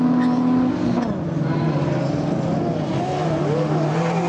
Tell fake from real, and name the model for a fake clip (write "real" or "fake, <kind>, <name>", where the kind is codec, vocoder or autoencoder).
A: real